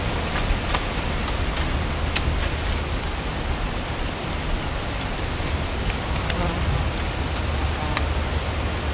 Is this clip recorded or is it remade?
recorded